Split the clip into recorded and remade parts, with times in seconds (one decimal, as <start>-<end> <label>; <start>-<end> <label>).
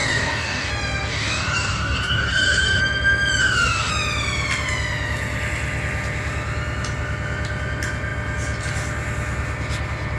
0.0-0.7 remade; 0.7-1.1 recorded; 1.1-2.8 remade; 2.8-3.4 recorded; 3.4-3.9 remade; 3.9-10.2 recorded